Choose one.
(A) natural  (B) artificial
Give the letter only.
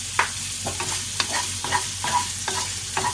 A